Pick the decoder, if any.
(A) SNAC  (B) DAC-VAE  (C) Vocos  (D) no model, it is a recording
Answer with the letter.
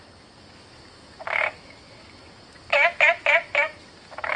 B